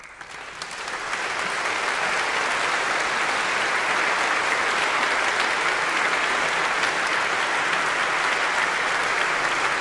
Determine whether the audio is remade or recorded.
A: recorded